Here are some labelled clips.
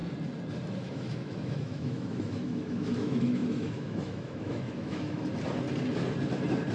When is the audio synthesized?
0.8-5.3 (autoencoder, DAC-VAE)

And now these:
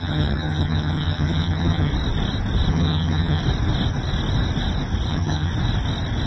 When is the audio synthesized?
0.0-1.9 (vocoder, HiFi-GAN); 2.7-3.4; 5.1-5.5

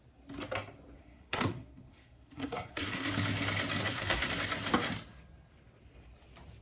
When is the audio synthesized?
1.0-3.1 (codec, SNAC); 3.8-4.3

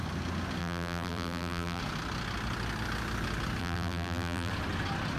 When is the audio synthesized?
0.6-1.8 (vocoder, BigVGAN v2); 3.6-4.5

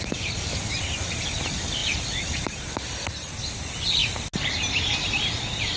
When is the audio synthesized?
1.8-2.7 (vocoder, BigVGAN v2)

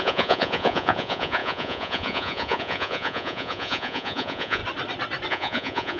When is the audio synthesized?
0.0-4.6 (vocoder, Vocos); 5.3-6.0